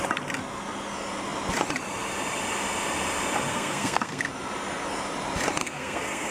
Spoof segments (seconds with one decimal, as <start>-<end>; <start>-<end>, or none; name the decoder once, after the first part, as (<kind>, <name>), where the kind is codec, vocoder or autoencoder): 3.5-4.3 (codec, SNAC); 5.6-6.3